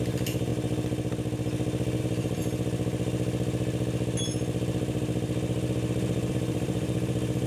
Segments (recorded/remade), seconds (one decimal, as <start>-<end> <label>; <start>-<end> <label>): 0.0-0.5 remade; 0.5-2.0 recorded; 2.0-2.4 remade; 2.4-6.3 recorded; 6.3-7.5 remade